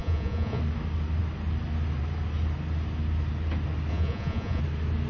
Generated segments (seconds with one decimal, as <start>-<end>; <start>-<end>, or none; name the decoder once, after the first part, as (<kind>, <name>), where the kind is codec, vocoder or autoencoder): 0.0-0.6 (vocoder, Vocos); 3.9-4.6